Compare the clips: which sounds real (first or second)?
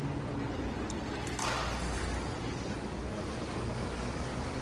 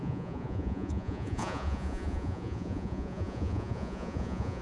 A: first